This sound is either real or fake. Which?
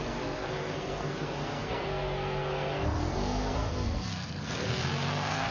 fake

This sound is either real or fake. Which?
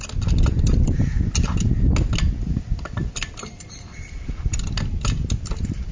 real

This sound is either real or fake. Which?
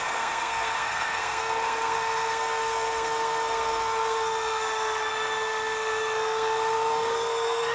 fake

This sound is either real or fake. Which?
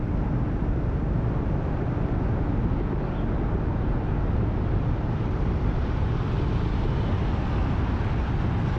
real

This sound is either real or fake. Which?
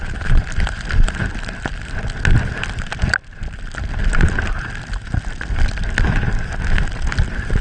real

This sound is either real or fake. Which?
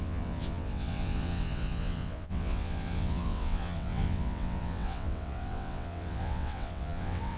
fake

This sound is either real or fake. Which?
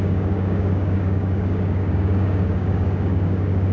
fake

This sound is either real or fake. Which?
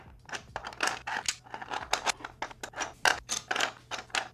real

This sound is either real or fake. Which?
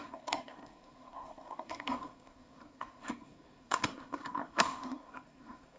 fake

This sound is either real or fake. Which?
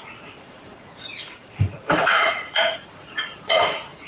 fake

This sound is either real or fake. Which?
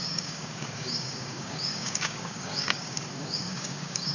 fake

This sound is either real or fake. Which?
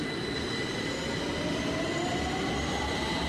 real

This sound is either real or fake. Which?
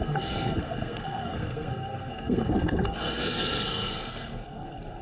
fake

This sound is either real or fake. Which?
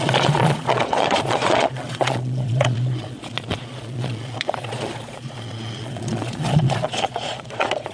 fake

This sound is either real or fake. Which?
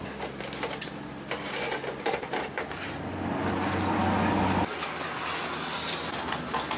real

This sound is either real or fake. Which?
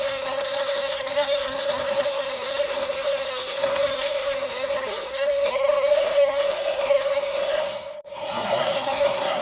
fake